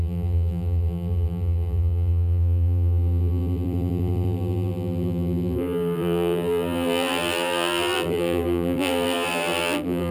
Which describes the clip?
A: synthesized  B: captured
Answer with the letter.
A